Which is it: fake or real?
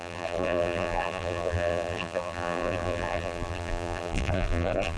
fake